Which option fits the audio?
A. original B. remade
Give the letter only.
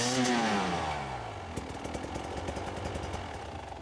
A